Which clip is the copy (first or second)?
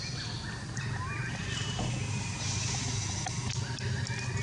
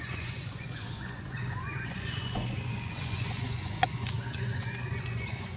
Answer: second